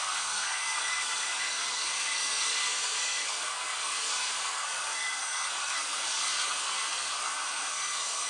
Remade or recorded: remade